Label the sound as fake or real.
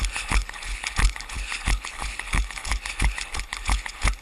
fake